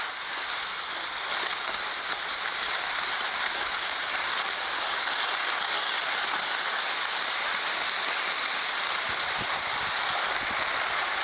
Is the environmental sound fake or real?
real